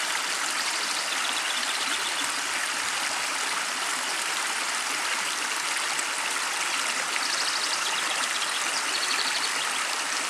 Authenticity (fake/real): real